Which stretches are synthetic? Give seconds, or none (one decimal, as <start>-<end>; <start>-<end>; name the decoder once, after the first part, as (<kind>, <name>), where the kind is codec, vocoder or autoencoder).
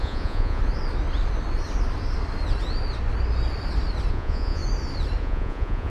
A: 0.0-0.6 (vocoder, Vocos); 4.1-4.6; 5.2-5.9